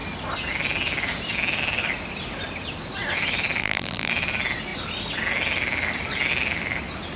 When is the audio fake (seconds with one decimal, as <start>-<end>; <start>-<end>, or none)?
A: 3.6-4.1